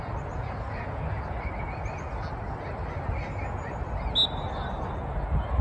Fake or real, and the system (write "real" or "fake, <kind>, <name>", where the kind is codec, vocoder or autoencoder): real